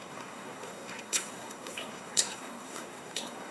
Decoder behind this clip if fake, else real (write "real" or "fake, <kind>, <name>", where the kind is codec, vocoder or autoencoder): fake, codec, SNAC